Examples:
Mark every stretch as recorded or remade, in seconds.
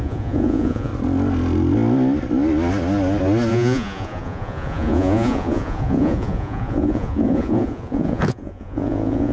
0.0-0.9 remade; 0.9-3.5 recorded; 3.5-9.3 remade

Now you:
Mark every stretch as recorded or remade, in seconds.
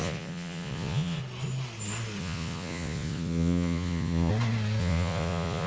0.0-1.2 remade; 1.2-2.2 recorded; 2.2-4.3 remade; 4.3-4.8 recorded; 4.8-5.7 remade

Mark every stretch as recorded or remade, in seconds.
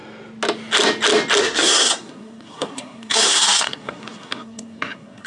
0.0-1.4 recorded; 1.4-5.3 remade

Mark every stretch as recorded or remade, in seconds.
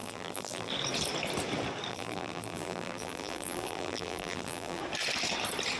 0.0-0.7 remade; 0.7-1.9 recorded; 1.9-4.8 remade; 4.8-5.8 recorded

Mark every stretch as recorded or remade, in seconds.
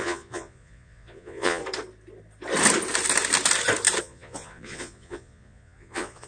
0.0-1.6 remade; 1.6-4.0 recorded; 4.0-6.3 remade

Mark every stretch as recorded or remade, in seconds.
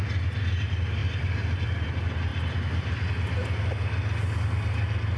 0.0-1.0 recorded; 1.0-1.9 remade; 1.9-5.2 recorded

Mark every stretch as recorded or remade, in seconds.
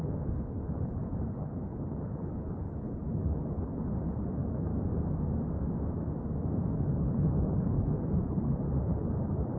0.0-4.7 remade; 4.7-6.7 recorded; 6.7-9.6 remade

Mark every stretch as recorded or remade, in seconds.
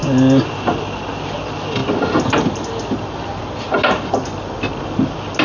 0.0-5.4 recorded